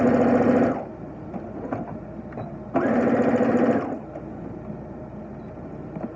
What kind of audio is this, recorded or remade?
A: recorded